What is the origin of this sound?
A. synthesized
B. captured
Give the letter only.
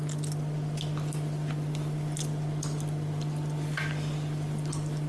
B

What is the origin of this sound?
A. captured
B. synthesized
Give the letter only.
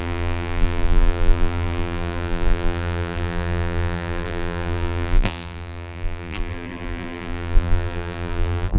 B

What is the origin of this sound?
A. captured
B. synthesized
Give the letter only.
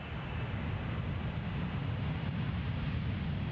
A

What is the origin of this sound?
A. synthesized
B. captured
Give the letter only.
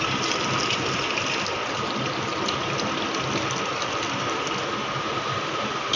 B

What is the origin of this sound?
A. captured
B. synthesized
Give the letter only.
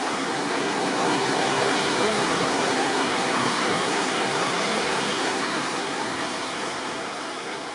B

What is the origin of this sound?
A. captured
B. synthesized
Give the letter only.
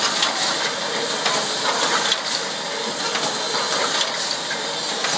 A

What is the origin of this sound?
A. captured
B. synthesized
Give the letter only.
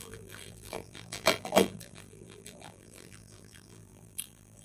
B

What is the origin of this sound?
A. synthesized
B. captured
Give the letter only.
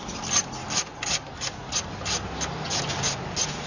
B